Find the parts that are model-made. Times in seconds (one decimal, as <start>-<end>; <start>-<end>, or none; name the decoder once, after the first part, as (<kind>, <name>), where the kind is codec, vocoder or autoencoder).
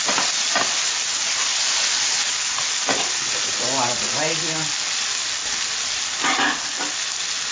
none